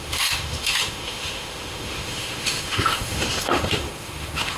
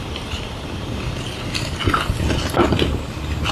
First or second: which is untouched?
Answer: second